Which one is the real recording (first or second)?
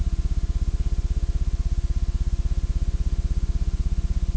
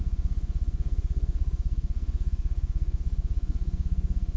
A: first